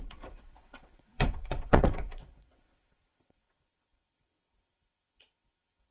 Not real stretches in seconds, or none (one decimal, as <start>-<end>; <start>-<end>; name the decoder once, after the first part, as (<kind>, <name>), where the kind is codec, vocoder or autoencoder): 0.0-5.9 (vocoder, WaveNeXt)

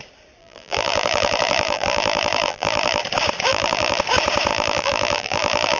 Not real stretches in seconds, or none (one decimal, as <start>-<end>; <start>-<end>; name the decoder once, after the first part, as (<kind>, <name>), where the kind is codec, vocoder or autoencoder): 0.4-3.0 (vocoder, BigVGAN v2); 3.5-4.0; 4.5-5.8

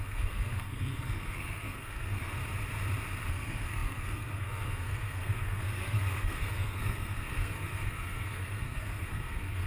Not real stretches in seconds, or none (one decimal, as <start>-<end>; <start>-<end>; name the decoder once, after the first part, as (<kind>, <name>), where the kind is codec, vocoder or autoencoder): 0.0-2.4 (codec, SNAC); 3.3-9.7

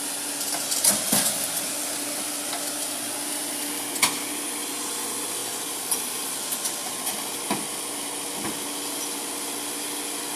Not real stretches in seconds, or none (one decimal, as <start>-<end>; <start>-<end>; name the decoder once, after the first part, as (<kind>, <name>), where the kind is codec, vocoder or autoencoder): 5.4-6.5 (vocoder, BigVGAN v2)

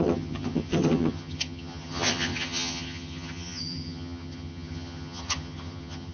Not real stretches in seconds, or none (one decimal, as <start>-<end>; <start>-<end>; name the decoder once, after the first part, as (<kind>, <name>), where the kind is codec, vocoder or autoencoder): 0.0-6.1 (vocoder, HiFi-GAN)

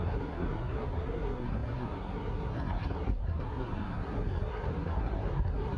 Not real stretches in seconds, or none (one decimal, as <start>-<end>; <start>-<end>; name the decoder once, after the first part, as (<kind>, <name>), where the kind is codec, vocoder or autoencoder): 0.0-5.8 (codec, SNAC)

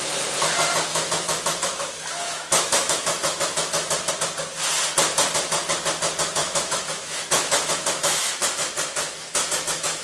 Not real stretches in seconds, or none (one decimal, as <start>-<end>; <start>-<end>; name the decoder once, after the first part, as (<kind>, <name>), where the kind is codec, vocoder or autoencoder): 0.9-4.1 (autoencoder, DAC-VAE); 6.4-10.0

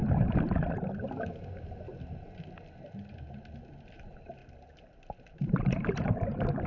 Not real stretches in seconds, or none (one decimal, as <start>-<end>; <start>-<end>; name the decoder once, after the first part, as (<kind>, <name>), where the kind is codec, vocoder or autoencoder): 4.0-4.4 (vocoder, BigVGAN v2); 5.3-6.7